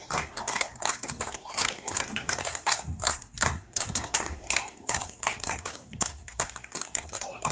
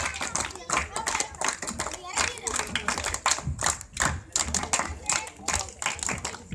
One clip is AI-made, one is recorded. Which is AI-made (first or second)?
first